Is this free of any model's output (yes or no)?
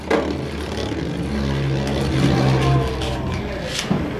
yes